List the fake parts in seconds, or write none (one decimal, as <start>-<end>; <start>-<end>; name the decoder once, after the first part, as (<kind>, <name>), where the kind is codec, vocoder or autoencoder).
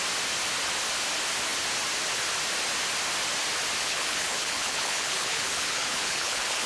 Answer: 3.8-6.7 (codec, HILCodec)